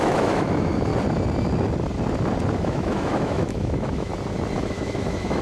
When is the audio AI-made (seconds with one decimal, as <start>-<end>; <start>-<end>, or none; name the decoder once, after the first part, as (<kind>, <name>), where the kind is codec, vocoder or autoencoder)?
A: 0.0-0.9 (autoencoder, DAC-VAE); 2.6-4.1; 4.6-5.4

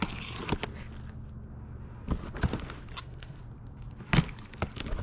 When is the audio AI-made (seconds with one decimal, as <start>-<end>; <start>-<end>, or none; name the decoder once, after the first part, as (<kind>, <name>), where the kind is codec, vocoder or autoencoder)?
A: 3.0-3.4 (codec, SNAC)

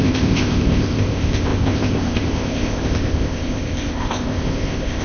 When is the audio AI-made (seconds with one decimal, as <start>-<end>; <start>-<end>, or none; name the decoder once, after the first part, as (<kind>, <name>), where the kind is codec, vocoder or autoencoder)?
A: 0.0-5.0 (codec, ZipCodec)

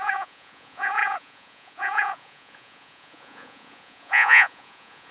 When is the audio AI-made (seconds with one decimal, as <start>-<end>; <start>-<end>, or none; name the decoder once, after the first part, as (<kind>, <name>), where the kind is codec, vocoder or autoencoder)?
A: 0.0-5.1 (vocoder, Vocos)

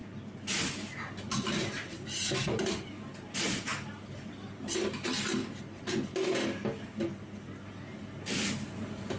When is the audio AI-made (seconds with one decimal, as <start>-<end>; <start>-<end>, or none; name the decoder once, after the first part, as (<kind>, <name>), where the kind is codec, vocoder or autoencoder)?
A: none

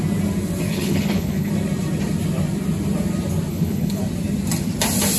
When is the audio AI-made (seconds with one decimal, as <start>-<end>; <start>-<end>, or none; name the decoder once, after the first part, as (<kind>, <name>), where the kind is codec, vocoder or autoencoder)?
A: 0.7-1.5 (codec, HILCodec); 3.5-4.0

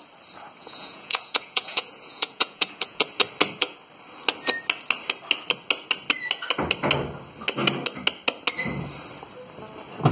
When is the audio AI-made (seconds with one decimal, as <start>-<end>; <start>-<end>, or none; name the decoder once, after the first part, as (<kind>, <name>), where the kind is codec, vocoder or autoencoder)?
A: 0.6-3.0 (vocoder, Vocos)

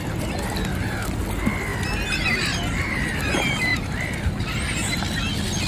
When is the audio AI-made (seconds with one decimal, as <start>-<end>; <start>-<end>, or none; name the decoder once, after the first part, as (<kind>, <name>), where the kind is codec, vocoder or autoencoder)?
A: 3.7-4.3 (vocoder, BigVGAN v2)